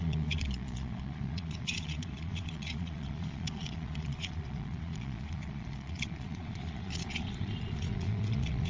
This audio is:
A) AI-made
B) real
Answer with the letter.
A